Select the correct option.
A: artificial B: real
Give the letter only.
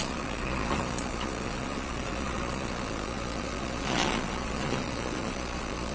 A